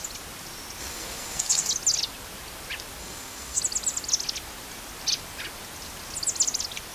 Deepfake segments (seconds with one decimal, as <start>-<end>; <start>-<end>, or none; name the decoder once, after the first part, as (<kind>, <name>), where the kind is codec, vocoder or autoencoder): 0.8-1.7 (codec, SNAC); 3.0-3.6